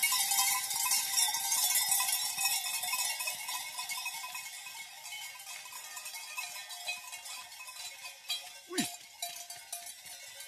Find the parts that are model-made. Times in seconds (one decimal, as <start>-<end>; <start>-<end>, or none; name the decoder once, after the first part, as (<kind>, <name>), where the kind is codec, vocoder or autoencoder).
none